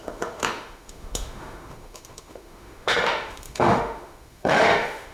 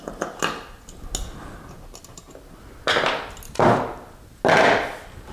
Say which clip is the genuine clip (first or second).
second